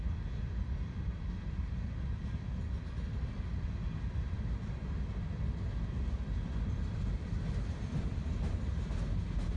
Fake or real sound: real